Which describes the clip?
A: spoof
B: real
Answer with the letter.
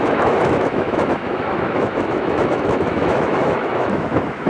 A